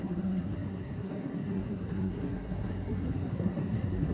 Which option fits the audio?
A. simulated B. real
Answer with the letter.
A